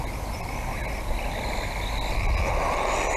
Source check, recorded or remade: recorded